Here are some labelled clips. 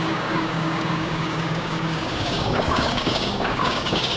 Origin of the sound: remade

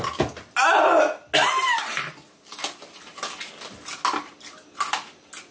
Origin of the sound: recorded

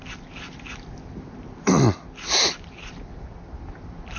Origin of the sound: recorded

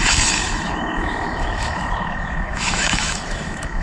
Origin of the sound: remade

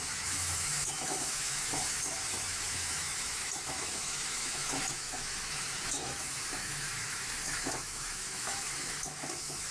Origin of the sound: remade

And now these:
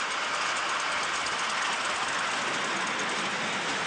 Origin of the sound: recorded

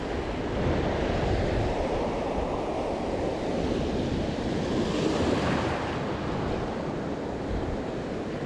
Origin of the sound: recorded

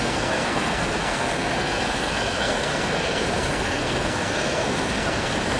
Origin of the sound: remade